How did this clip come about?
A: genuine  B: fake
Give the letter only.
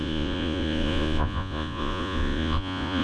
B